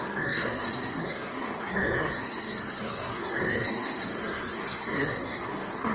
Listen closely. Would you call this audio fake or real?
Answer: fake